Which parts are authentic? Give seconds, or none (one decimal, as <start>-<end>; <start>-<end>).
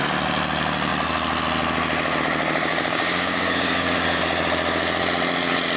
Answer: 0.0-2.7; 4.2-5.8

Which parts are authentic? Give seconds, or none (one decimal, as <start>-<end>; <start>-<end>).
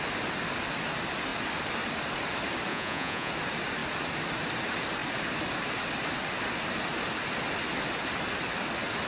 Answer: 0.0-2.7; 3.3-9.1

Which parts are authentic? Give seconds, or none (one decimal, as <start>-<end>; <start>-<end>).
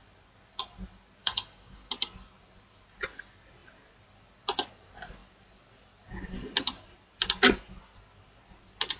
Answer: 0.0-1.2; 1.9-9.0